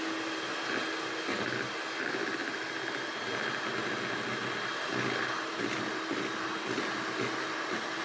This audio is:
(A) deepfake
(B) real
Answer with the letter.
B